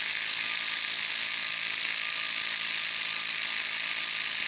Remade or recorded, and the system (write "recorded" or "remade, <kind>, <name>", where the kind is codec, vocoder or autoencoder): recorded